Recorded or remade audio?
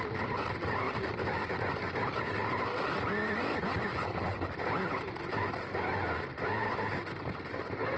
recorded